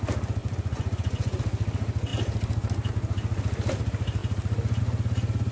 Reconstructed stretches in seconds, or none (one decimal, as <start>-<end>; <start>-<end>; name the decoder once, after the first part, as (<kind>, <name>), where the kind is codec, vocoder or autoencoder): 0.4-1.4 (vocoder, Vocos)